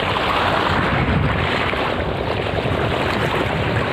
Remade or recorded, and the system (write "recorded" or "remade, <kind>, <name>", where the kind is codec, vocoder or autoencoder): recorded